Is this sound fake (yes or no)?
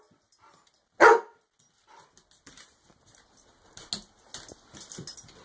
no